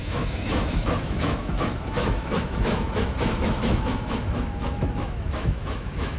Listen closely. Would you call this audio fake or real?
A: fake